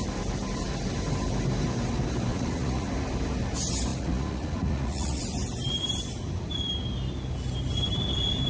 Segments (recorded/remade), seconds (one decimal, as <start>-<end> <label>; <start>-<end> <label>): 0.0-2.3 recorded; 2.3-2.9 remade; 2.9-3.9 recorded; 3.9-5.2 remade; 5.2-8.5 recorded